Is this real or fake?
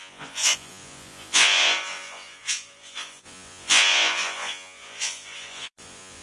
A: fake